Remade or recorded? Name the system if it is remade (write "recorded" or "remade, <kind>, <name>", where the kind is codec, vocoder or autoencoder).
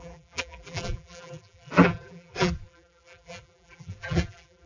remade, vocoder, BigVGAN v2